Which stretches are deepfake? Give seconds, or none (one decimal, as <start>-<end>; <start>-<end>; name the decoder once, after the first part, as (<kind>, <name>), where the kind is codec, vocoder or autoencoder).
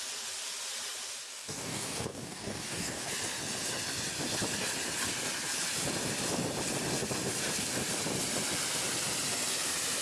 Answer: 1.3-3.1 (codec, DAC)